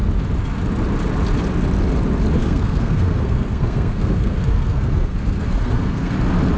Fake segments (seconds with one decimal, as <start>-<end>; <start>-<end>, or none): 2.4-6.1